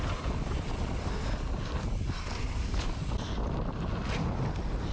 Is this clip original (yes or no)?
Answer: yes